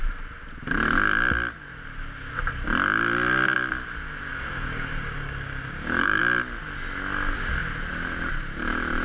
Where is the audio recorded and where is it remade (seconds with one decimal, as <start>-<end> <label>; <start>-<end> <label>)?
0.0-4.3 recorded; 4.3-6.2 remade; 6.2-9.0 recorded